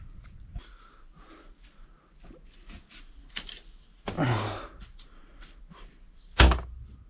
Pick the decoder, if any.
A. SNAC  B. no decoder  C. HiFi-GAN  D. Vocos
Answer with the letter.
B